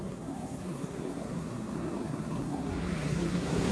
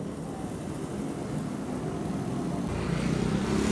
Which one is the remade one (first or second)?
first